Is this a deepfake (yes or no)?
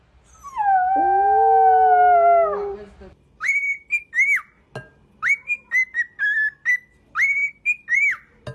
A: no